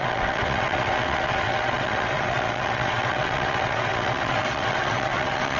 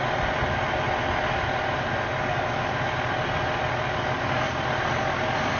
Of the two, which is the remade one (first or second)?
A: first